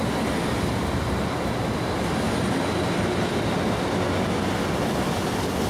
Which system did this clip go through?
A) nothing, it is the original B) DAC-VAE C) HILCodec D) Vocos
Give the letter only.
A